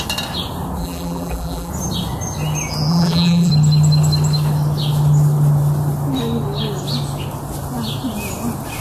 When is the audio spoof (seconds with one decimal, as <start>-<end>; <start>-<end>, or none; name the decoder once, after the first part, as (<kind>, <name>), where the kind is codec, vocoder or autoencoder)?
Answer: 0.8-1.7 (vocoder, BigVGAN v2); 2.9-3.5